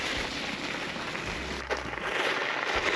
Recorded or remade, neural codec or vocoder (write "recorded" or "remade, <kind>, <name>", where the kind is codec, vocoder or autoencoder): recorded